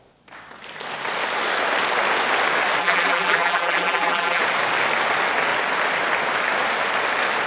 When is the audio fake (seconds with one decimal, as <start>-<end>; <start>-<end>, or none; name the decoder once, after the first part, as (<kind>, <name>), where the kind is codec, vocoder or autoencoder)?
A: 2.8-4.4 (vocoder, BigVGAN v2)